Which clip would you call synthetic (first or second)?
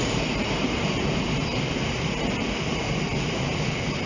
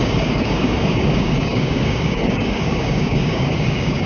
second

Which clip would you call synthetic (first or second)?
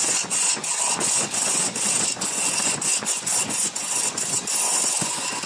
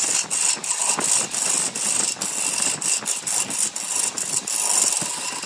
first